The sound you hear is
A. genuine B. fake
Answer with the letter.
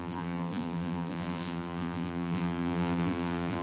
B